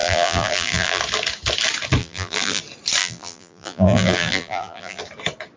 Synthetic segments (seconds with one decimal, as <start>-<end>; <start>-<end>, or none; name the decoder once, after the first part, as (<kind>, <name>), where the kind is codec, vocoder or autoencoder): 0.0-1.0 (vocoder, BigVGAN v2); 2.0-2.6; 3.0-5.0